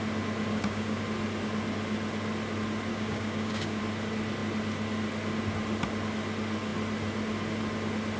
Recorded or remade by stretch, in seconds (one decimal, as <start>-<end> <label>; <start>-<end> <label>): 0.0-0.5 recorded; 0.5-1.0 remade; 1.0-2.9 recorded; 2.9-3.8 remade; 3.8-8.2 recorded